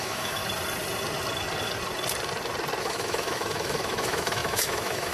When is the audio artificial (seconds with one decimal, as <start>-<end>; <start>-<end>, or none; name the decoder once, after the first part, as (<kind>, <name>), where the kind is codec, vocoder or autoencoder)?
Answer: 0.0-0.4 (autoencoder, DAC-VAE); 2.8-5.1

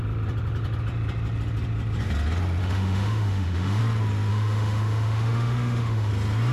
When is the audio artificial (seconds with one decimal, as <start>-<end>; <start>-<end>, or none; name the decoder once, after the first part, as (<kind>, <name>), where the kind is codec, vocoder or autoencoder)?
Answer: 2.6-3.8 (autoencoder, DAC-VAE); 4.3-6.1

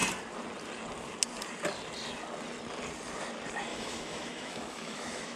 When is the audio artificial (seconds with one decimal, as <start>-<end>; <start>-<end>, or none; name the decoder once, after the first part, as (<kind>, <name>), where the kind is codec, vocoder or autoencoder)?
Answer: 3.7-5.4 (autoencoder, DAC-VAE)

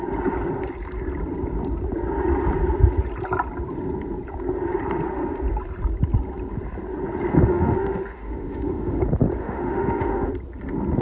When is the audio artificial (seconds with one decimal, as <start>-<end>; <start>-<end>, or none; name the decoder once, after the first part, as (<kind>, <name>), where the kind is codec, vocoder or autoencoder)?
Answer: 7.5-9.0 (autoencoder, DAC-VAE); 9.4-10.3

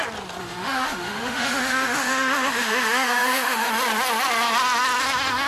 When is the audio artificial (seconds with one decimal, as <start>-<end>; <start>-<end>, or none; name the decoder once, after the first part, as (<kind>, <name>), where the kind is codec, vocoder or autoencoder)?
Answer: 0.4-3.7 (autoencoder, DAC-VAE)

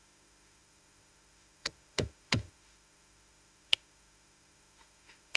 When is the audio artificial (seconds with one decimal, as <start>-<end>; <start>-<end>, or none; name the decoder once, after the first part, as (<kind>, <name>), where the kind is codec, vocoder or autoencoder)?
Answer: 0.0-5.4 (autoencoder, DAC-VAE)

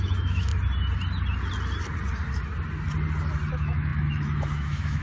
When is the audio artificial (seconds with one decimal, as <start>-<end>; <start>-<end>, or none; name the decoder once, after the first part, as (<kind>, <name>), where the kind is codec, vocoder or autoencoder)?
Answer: 0.0-0.5 (autoencoder, DAC-VAE); 3.5-5.0